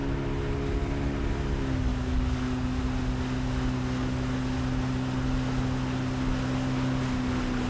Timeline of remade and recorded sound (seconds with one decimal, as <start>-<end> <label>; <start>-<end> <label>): 0.0-1.9 recorded; 1.9-2.8 remade; 2.8-7.7 recorded